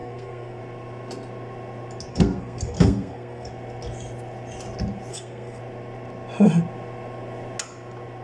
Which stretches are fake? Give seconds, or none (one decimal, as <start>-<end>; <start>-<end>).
0.0-0.6; 2.1-3.5; 5.1-5.6